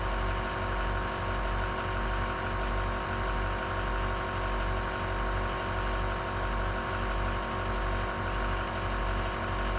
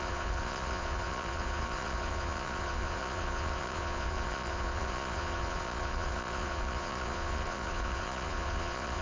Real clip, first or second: first